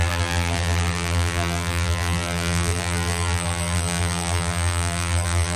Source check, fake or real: fake